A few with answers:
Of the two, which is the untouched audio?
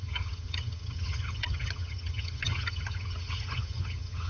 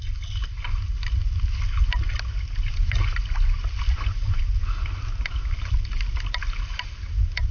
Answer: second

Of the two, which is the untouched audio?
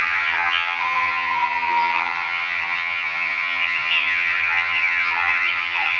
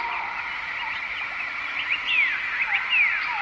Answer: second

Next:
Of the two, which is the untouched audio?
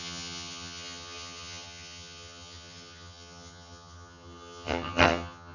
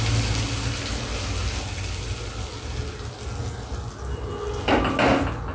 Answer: second